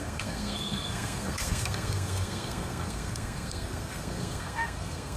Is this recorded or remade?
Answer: remade